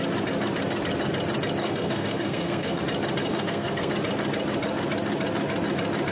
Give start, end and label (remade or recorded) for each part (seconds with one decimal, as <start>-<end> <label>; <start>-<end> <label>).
0.0-1.6 recorded; 1.6-2.8 remade; 2.8-3.2 recorded; 3.2-3.9 remade; 3.9-6.1 recorded